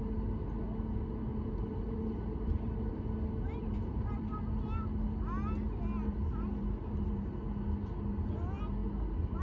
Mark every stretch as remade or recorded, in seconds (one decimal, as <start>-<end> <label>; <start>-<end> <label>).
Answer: 0.0-1.3 recorded; 1.3-2.9 remade; 2.9-3.6 recorded; 3.6-4.4 remade; 4.4-6.1 recorded; 6.1-7.2 remade; 7.2-8.8 recorded; 8.8-9.4 remade